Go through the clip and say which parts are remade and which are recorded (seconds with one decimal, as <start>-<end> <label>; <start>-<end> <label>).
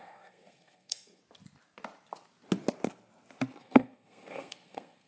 0.0-1.2 remade; 1.2-3.6 recorded; 3.6-5.1 remade